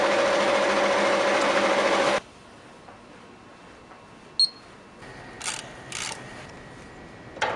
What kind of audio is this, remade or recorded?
recorded